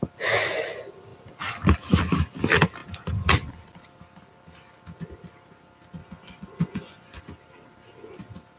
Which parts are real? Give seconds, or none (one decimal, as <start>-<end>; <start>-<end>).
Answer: 0.0-6.0; 7.2-8.6

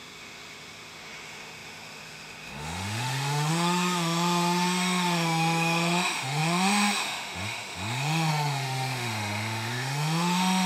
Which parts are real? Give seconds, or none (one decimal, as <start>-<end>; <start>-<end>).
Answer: none